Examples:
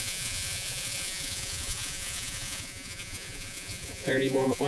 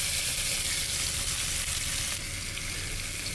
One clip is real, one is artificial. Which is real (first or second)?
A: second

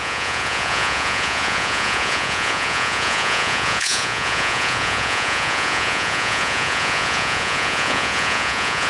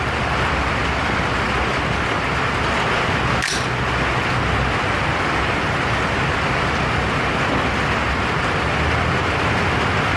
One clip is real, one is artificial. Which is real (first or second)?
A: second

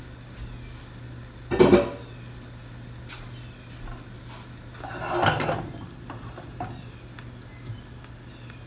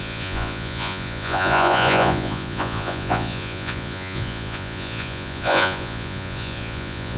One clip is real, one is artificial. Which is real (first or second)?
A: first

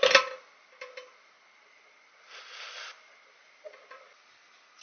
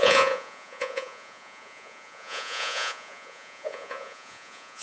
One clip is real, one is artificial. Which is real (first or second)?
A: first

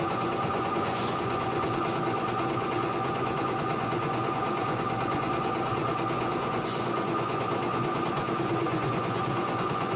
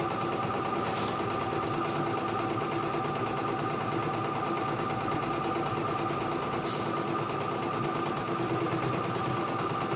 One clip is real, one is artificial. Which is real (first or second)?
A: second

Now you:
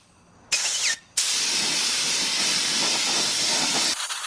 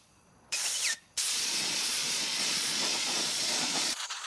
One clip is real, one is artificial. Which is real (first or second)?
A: first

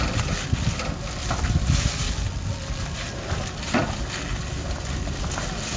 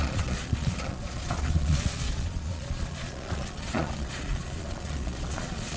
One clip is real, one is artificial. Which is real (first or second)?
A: first